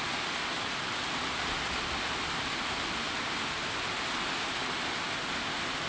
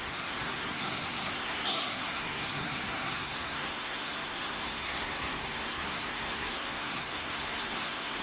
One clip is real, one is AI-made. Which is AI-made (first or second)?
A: second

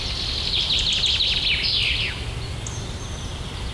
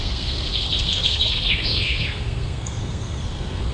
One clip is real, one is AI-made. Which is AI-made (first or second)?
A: second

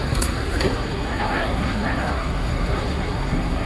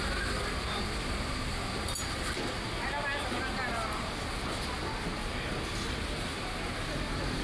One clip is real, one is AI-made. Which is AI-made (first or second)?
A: first